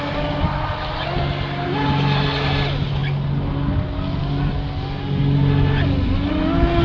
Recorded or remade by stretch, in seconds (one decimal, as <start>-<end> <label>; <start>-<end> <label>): 0.0-6.8 recorded